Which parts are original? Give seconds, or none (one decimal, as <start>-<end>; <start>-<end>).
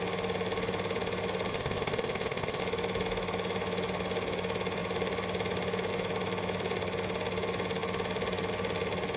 0.0-1.5; 2.6-9.2